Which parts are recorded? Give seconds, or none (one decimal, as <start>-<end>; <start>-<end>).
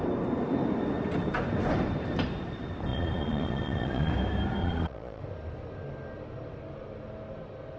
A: 0.0-2.9; 4.1-4.6; 5.2-7.8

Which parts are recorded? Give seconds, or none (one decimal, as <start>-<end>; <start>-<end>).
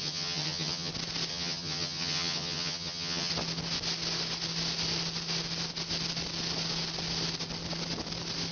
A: 0.9-1.3; 3.3-8.5